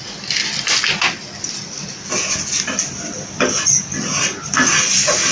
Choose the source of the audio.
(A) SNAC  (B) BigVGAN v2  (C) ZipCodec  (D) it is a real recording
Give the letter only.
D